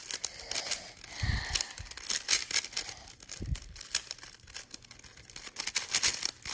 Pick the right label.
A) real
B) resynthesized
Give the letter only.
A